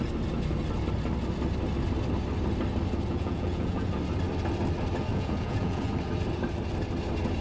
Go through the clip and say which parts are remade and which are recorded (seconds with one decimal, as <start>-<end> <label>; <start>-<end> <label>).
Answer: 0.0-3.1 recorded; 3.1-3.9 remade; 3.9-5.1 recorded; 5.1-5.8 remade; 5.8-7.4 recorded